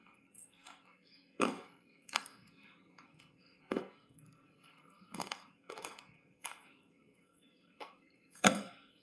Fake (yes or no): yes